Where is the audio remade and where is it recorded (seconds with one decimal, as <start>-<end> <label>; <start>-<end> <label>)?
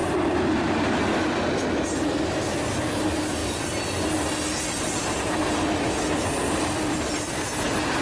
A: 0.0-8.0 recorded